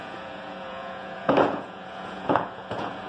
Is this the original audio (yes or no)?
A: no